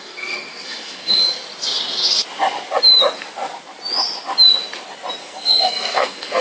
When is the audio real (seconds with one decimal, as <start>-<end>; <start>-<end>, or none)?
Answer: 1.4-5.2

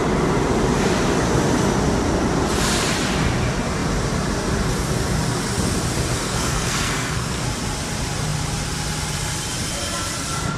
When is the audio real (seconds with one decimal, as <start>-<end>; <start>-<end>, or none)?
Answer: 0.0-6.1; 7.4-10.6

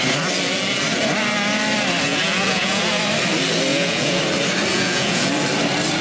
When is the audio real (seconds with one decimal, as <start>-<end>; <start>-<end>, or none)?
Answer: 0.0-2.1; 3.0-3.7; 4.2-4.7; 5.3-6.0

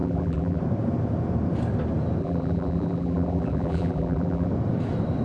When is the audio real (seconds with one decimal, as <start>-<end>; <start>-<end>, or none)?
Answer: 0.6-2.2; 4.5-5.2